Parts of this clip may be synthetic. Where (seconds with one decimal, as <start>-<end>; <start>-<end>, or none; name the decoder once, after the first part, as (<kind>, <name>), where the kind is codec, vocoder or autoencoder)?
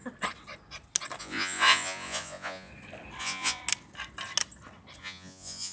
1.2-2.7 (vocoder, Vocos); 3.2-3.6; 5.0-5.7